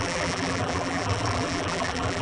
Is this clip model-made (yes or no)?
yes